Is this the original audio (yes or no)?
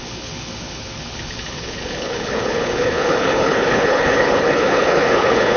no